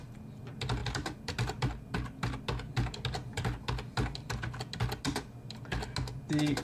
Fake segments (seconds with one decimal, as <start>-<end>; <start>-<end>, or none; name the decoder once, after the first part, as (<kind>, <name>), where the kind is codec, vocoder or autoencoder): none